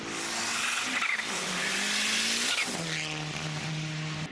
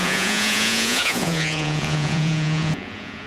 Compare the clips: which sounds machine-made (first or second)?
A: second